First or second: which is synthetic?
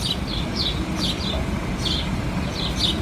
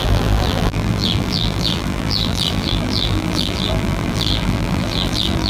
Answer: second